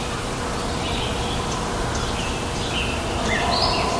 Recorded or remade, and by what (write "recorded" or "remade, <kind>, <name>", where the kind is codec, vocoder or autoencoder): recorded